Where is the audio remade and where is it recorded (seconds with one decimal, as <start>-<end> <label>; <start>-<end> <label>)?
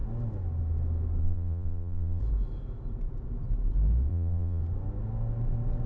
0.0-1.2 recorded; 1.2-2.2 remade; 2.2-4.1 recorded; 4.1-4.6 remade; 4.6-5.9 recorded